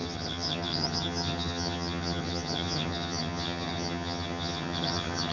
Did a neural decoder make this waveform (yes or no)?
yes